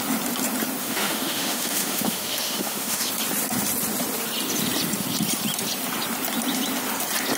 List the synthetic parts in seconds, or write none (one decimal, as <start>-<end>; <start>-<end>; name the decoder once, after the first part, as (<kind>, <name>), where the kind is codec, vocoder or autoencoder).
0.8-3.1 (autoencoder, DAC-VAE)